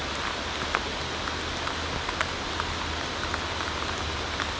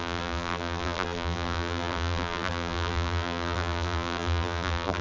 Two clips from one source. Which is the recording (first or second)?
first